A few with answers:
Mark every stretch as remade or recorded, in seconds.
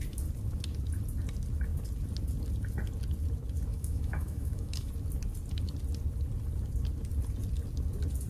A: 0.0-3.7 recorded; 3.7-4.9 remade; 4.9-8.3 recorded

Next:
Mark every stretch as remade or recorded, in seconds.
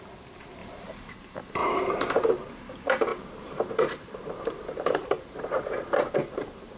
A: 0.0-1.6 remade; 1.6-2.3 recorded; 2.3-6.8 remade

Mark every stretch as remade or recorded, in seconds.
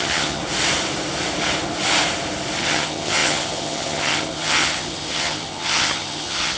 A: 0.0-0.4 remade; 0.4-2.6 recorded; 2.6-6.6 remade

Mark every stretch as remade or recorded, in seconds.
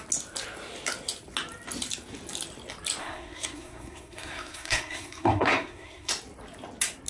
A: 0.0-3.0 recorded; 3.0-6.1 remade; 6.1-7.1 recorded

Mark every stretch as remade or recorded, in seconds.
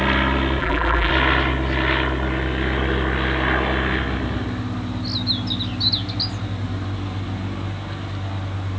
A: 0.0-0.6 recorded; 0.6-1.1 remade; 1.1-8.8 recorded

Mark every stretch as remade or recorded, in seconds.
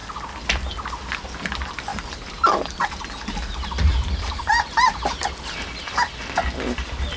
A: 0.0-7.2 recorded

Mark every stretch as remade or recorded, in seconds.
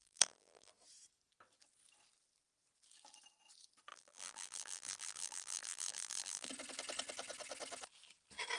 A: 0.0-0.7 remade; 0.7-3.9 recorded; 3.9-6.5 remade; 6.5-8.6 recorded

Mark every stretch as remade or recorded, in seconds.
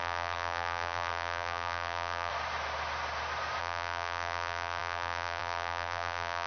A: 0.0-2.3 remade; 2.3-3.6 recorded; 3.6-6.5 remade